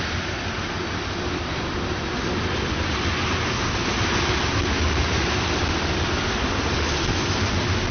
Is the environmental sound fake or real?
real